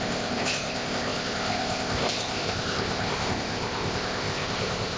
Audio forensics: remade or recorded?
remade